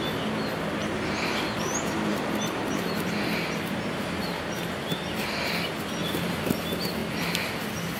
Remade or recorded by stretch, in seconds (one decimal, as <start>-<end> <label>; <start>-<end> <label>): 0.0-0.8 recorded; 0.8-4.4 remade; 4.4-6.0 recorded; 6.0-6.5 remade; 6.5-8.0 recorded